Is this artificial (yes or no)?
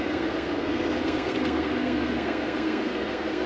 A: yes